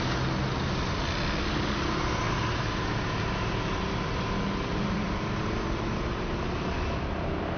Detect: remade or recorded recorded